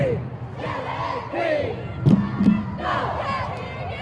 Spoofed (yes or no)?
no